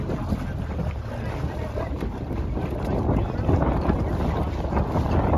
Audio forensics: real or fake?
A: real